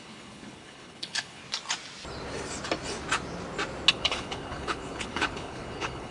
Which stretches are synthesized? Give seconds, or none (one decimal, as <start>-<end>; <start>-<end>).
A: 0.0-1.4; 3.9-6.1